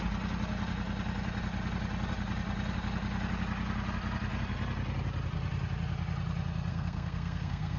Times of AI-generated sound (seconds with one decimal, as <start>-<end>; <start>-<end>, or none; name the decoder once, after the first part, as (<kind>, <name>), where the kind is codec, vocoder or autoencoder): 6.7-7.8 (codec, SNAC)